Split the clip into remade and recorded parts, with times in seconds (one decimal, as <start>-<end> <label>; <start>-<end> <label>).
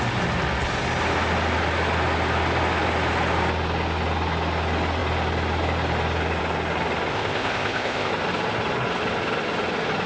0.0-7.1 recorded; 7.1-8.1 remade; 8.1-10.1 recorded